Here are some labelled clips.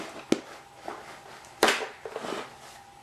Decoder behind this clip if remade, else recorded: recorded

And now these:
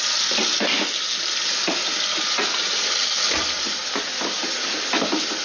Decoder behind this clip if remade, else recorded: recorded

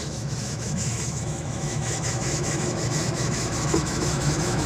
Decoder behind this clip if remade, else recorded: remade, autoencoder, DAC-VAE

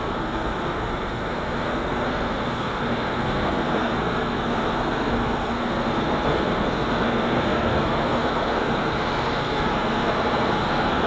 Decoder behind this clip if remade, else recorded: remade, codec, SNAC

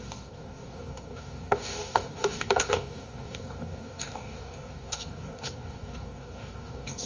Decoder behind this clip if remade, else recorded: remade, codec, DAC